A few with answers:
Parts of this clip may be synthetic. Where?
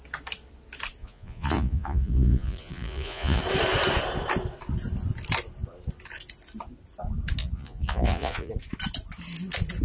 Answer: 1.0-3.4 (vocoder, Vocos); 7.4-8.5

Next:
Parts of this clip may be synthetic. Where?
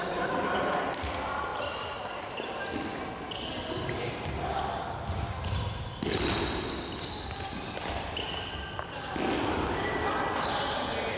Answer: none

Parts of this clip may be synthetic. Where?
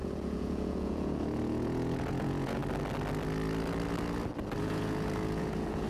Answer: 0.0-2.6 (vocoder, Vocos); 4.6-5.9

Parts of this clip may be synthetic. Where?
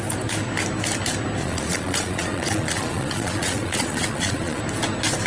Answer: 1.4-4.6 (vocoder, Vocos)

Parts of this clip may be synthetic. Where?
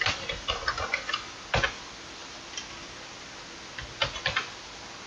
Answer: none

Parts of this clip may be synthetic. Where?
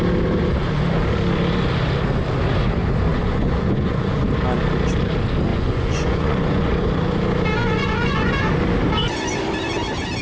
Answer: 3.1-4.2 (vocoder, Vocos); 5.5-6.7; 7.6-8.3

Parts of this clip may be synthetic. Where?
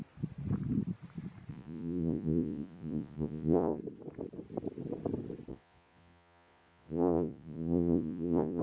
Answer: 1.5-3.8 (vocoder, Vocos); 5.5-8.6